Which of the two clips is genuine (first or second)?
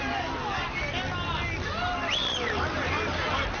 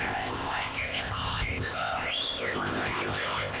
first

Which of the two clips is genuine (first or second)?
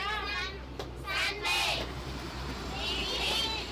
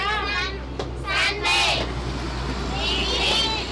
second